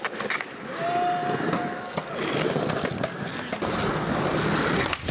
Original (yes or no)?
yes